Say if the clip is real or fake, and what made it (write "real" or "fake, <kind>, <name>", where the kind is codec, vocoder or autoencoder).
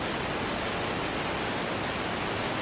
real